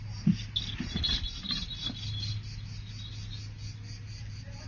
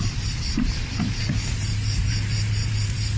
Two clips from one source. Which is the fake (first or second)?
second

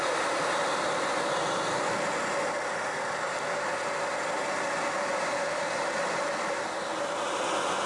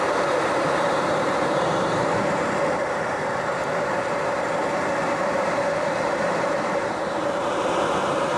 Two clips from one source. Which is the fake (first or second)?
second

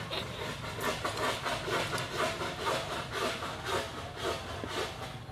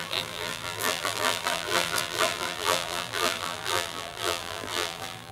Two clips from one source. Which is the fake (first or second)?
second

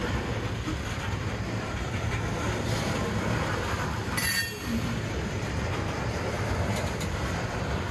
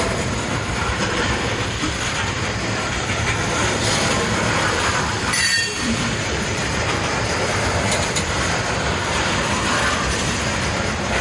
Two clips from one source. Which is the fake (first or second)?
second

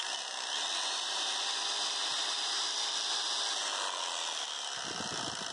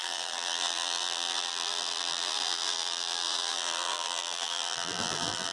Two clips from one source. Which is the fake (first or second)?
second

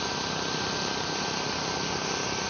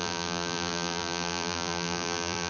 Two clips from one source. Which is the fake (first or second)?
second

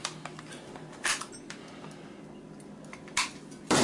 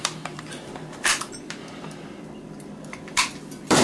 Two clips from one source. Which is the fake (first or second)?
second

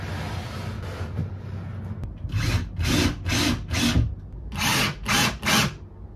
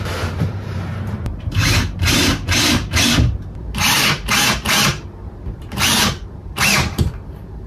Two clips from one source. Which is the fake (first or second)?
second